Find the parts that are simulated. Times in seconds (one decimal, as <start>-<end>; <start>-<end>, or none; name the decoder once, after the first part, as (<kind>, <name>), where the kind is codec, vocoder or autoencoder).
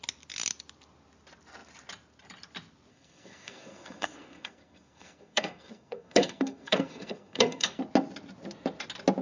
2.9-7.8 (codec, SNAC)